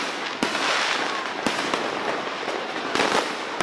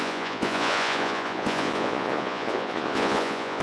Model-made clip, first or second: second